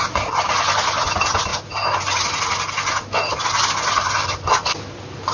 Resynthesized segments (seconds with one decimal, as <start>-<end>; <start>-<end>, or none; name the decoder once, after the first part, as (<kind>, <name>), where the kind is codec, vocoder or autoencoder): none